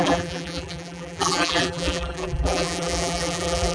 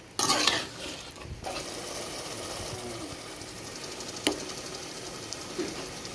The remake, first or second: first